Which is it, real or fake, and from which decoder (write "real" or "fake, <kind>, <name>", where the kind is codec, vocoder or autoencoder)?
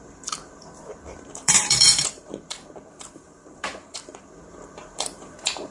fake, vocoder, BigVGAN v2